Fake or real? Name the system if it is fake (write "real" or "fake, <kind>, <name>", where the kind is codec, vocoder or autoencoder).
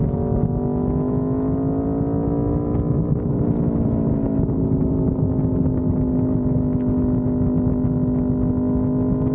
real